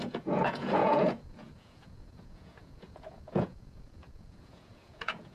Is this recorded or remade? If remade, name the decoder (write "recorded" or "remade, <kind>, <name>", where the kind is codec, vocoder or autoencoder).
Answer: remade, vocoder, Vocos